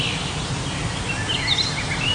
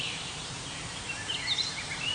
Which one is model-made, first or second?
second